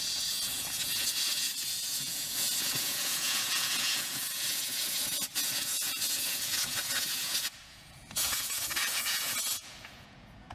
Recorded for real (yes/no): no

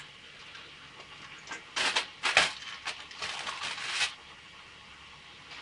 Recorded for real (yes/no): yes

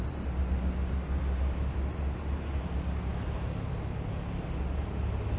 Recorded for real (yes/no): yes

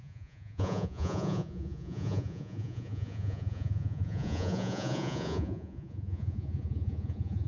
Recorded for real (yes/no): no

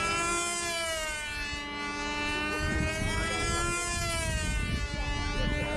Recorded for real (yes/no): yes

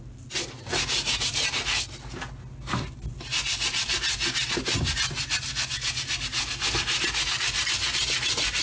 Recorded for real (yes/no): yes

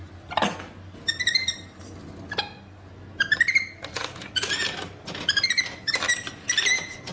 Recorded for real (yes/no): yes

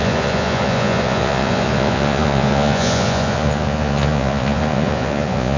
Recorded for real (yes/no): no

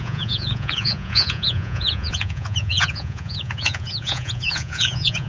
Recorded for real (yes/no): no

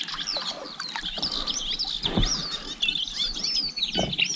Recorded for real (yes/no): yes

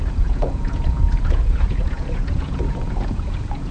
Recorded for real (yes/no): no